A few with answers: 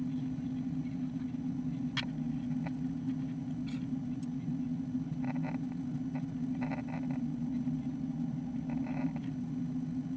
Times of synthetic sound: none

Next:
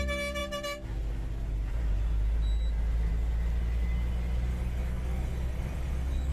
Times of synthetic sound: 4.5-6.3

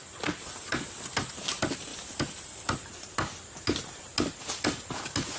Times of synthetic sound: none